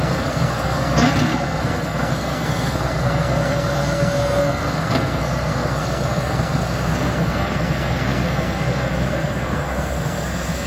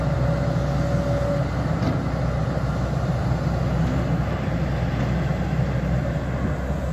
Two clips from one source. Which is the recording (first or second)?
second